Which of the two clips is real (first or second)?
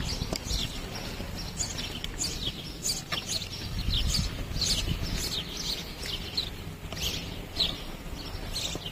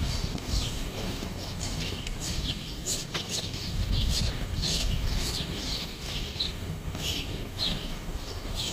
first